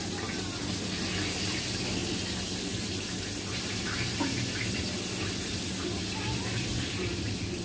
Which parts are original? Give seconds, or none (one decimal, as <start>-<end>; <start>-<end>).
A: 0.0-7.6